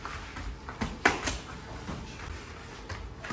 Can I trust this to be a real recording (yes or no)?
yes